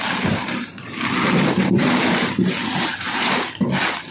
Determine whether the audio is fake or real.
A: fake